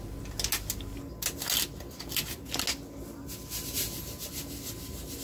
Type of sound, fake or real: real